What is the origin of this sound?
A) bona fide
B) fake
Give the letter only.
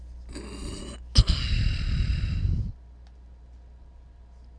A